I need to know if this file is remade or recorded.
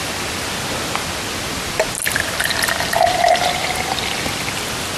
recorded